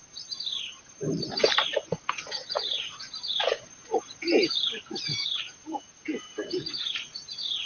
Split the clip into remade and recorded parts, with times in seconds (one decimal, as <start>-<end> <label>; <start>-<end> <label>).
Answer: 0.0-1.9 recorded; 1.9-7.7 remade